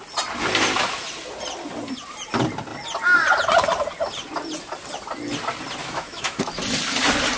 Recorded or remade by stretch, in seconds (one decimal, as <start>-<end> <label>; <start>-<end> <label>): 0.0-5.8 recorded; 5.8-6.4 remade; 6.4-7.4 recorded